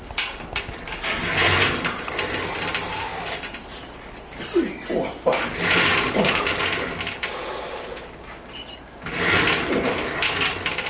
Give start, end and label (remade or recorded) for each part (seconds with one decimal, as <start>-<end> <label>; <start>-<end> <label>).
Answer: 0.0-10.9 recorded